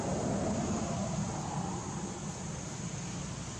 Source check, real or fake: real